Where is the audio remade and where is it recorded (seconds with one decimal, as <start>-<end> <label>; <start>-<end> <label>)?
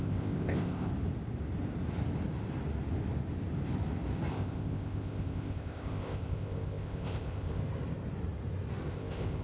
0.0-0.9 remade; 0.9-4.3 recorded; 4.3-7.6 remade; 7.6-8.9 recorded; 8.9-9.4 remade